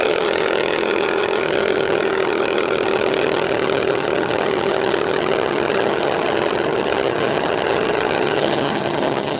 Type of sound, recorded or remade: remade